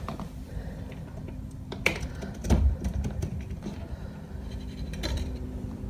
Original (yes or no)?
no